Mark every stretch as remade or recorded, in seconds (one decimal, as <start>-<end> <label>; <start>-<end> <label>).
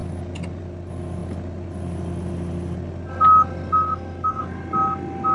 0.0-5.3 recorded